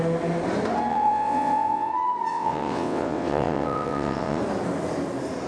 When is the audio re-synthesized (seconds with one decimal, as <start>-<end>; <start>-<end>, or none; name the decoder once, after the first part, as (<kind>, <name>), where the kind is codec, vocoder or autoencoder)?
0.9-1.9 (vocoder, WaveNeXt); 2.3-4.4